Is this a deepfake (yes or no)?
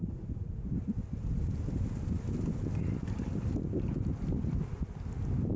no